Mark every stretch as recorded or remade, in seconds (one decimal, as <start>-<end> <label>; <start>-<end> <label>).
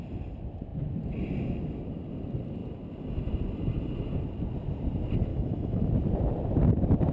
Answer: 0.0-5.3 recorded; 5.3-5.9 remade; 5.9-7.1 recorded